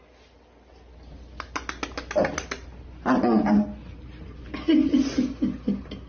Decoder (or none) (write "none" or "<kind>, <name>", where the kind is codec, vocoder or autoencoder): none